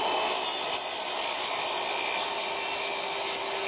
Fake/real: real